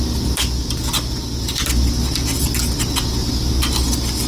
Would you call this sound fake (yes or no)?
no